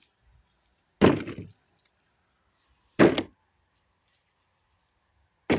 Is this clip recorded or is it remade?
recorded